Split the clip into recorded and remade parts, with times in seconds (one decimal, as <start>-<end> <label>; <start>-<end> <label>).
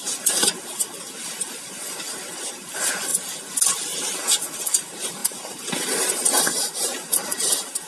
0.0-3.1 remade; 3.1-4.1 recorded; 4.1-7.9 remade